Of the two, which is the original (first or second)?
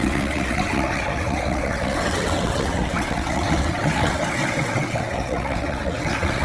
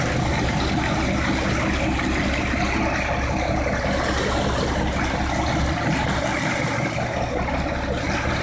second